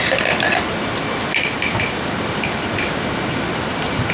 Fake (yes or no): no